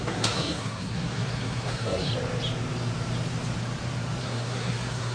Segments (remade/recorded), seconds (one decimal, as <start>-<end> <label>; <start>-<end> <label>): 0.0-2.1 remade; 2.1-4.2 recorded; 4.2-5.1 remade

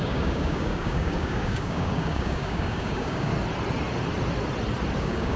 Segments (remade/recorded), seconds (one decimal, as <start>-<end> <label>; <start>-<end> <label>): 0.0-3.3 remade; 3.3-5.0 recorded; 5.0-5.4 remade

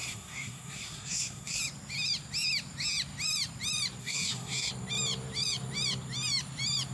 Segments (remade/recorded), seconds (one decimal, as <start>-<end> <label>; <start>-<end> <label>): 0.0-1.6 remade; 1.6-4.0 recorded; 4.0-4.7 remade; 4.7-6.9 recorded

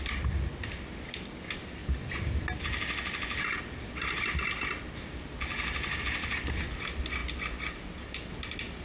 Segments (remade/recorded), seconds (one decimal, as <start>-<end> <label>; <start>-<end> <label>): 0.0-8.8 recorded

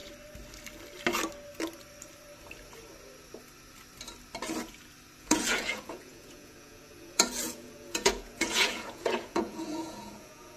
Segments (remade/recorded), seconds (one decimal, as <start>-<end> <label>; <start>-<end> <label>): 0.0-5.2 recorded; 5.2-10.6 remade